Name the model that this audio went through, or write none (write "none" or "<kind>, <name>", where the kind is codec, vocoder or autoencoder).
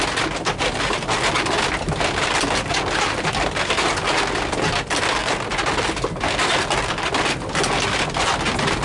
none